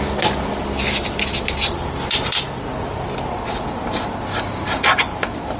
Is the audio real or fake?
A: real